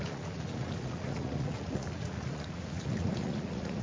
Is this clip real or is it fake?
fake